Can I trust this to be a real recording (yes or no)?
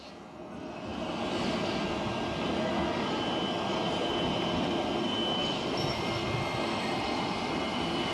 yes